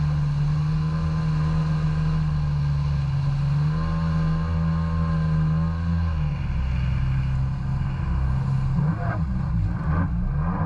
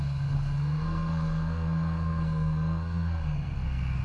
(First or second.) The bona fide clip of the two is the first